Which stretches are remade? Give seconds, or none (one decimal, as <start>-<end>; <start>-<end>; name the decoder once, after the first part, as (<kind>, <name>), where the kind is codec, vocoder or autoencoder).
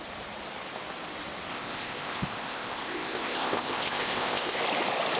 1.5-4.6 (codec, ZipCodec)